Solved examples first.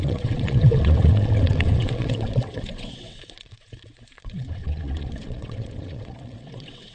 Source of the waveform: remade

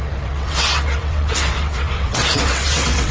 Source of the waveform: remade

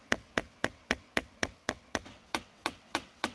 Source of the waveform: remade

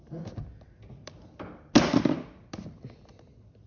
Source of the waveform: recorded